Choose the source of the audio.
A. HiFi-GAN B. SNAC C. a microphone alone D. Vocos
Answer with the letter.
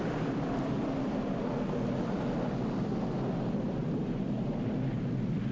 C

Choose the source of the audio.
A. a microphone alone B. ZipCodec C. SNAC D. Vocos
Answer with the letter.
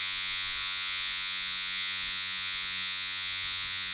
D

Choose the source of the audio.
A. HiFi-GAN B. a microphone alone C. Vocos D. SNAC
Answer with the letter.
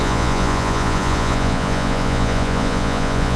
C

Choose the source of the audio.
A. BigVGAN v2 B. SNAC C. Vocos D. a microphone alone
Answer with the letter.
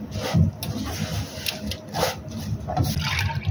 D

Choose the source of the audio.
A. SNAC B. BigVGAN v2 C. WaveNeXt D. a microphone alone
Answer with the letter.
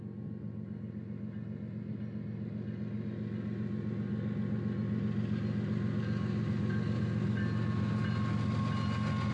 D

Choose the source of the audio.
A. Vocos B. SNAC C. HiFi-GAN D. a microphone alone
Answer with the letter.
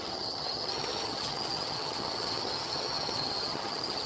C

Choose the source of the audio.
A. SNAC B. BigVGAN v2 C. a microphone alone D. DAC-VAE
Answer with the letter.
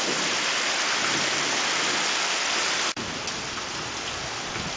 C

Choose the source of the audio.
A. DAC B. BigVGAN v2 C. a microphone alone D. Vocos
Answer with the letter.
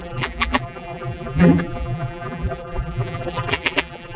B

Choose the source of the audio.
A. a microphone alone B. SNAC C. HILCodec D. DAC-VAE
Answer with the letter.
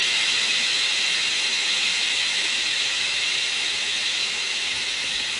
D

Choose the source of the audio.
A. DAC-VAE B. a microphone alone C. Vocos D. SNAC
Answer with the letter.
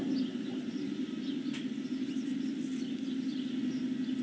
B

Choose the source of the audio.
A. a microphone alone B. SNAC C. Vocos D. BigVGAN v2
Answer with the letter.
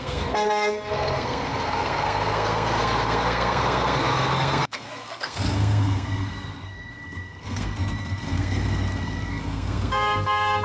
B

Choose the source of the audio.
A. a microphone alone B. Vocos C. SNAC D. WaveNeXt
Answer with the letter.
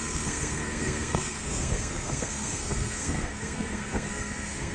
C